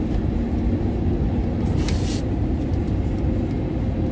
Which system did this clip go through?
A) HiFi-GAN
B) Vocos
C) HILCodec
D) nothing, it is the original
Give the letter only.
D